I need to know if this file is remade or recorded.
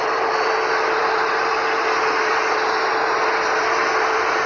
recorded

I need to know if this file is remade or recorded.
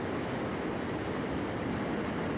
recorded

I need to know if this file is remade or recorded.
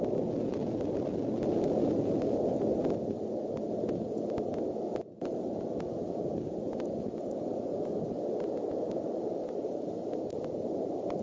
recorded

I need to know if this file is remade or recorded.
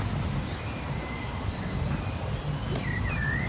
recorded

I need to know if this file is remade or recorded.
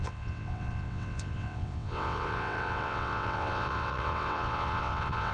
remade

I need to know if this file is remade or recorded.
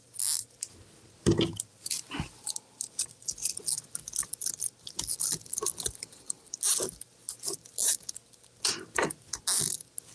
recorded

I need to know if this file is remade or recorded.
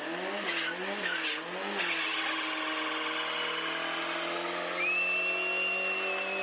recorded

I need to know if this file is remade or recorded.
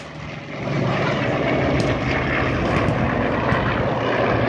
recorded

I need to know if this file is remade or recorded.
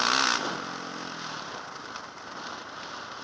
recorded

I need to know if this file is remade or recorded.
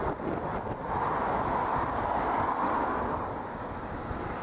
recorded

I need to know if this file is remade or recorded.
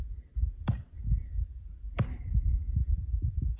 recorded